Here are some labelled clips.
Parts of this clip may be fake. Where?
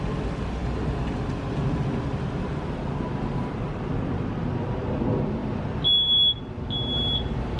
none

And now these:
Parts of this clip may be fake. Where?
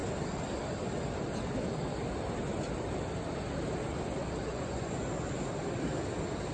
4.5-5.1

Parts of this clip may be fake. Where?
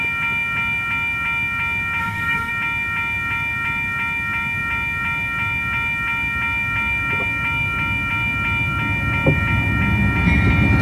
2.0-2.5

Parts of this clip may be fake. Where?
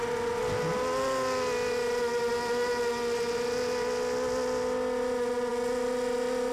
none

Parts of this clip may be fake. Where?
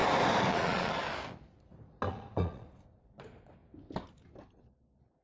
0.5-1.0; 2.1-3.6; 4.6-5.2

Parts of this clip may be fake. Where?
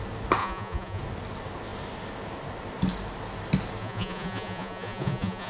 0.4-1.0; 3.8-5.5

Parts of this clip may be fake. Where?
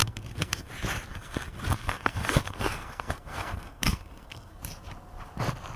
0.0-0.7; 1.1-4.6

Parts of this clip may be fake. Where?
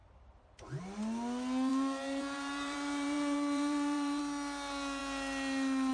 1.7-4.2